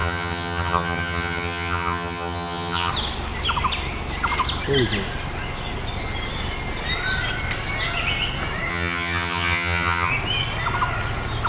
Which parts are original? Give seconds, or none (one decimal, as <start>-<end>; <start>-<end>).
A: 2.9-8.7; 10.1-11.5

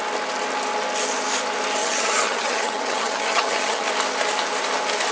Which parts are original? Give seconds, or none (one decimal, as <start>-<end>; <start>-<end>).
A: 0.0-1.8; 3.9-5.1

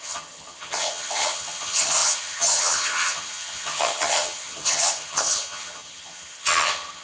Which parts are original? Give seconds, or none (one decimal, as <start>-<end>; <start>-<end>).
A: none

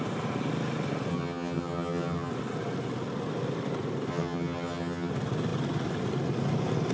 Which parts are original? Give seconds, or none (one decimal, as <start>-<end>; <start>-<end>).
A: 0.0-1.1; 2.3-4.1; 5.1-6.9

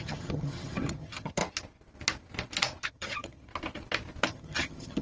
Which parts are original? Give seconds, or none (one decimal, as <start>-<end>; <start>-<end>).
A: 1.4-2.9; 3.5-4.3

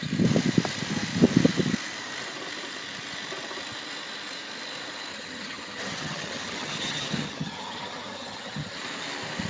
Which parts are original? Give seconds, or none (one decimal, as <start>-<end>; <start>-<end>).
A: 0.0-5.1; 8.8-9.5

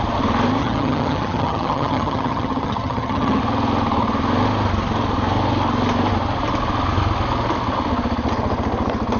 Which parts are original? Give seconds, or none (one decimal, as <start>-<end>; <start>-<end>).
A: 0.0-0.6; 3.4-9.2

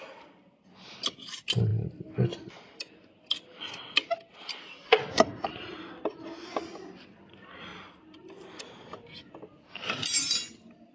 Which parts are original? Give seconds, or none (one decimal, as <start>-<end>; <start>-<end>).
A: 0.0-10.9